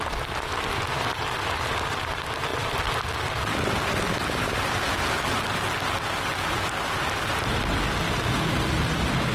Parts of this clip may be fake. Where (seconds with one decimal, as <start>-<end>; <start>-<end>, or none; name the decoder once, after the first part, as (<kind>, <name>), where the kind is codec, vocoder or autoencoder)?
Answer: none